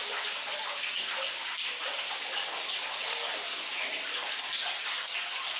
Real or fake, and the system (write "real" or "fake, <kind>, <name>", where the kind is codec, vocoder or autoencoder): real